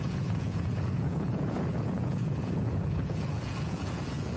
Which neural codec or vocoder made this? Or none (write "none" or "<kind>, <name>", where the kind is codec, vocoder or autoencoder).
vocoder, Vocos